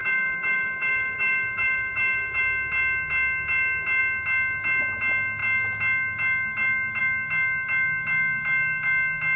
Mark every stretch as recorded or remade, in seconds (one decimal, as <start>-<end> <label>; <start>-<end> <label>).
0.0-2.4 remade; 2.4-9.4 recorded